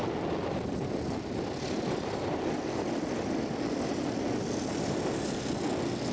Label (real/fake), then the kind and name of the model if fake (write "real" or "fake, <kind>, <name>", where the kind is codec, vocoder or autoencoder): real